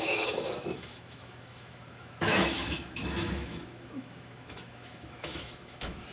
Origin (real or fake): fake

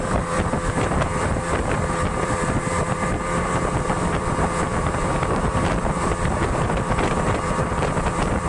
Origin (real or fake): fake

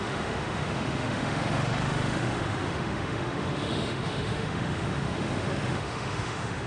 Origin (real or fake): fake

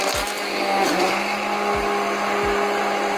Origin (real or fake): real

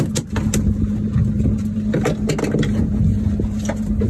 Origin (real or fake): real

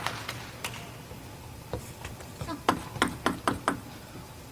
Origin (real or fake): real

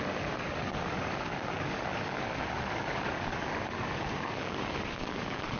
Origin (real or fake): fake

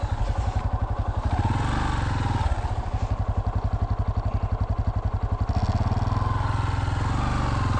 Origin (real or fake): real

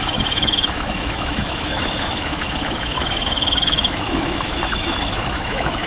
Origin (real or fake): fake